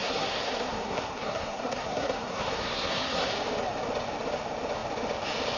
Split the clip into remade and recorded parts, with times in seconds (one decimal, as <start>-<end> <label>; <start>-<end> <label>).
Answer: 0.0-3.3 remade; 3.3-5.6 recorded

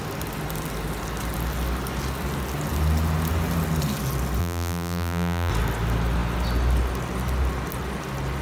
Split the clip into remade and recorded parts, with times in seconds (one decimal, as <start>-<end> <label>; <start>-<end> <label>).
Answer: 0.0-4.4 recorded; 4.4-5.5 remade; 5.5-8.4 recorded

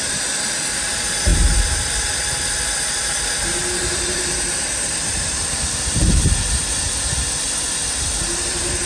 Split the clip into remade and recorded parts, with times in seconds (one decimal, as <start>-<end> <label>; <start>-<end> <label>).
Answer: 0.0-8.9 remade